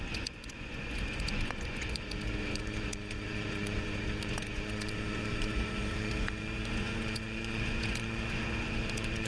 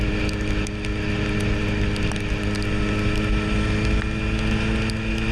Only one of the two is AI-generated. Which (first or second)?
first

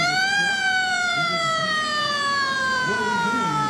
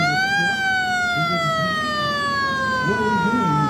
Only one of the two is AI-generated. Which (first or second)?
first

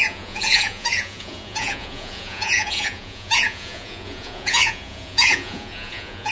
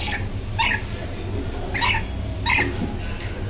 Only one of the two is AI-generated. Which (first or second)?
first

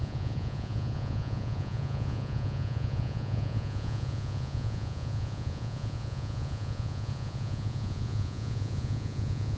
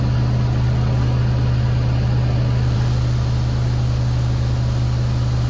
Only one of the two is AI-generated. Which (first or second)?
first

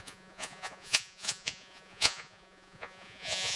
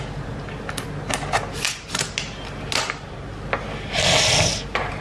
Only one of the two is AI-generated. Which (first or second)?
first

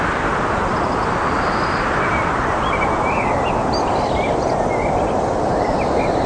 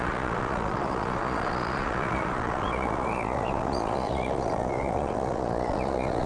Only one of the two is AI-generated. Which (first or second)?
second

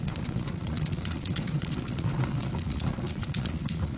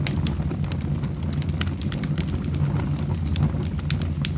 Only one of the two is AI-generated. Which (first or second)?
first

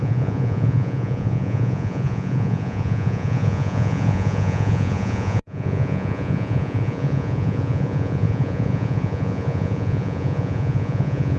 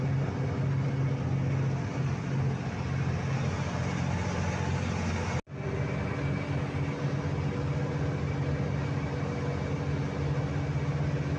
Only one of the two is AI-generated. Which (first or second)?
first